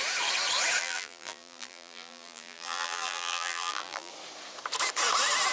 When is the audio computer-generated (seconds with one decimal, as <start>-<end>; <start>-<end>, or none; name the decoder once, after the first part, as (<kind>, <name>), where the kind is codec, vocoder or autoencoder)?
0.8-4.1 (vocoder, BigVGAN v2)